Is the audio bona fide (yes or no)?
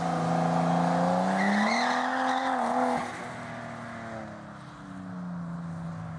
yes